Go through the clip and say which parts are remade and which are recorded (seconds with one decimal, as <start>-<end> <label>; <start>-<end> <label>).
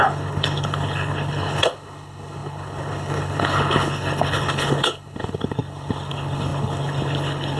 0.0-7.6 remade